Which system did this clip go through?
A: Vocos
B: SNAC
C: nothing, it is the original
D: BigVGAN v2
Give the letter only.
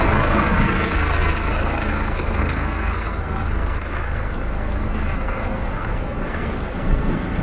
B